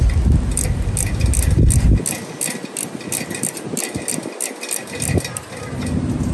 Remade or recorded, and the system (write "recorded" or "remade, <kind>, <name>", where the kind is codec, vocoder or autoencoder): recorded